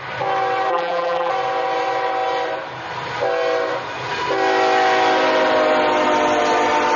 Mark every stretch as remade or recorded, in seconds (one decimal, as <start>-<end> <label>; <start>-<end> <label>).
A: 0.0-0.7 recorded; 0.7-1.3 remade; 1.3-7.0 recorded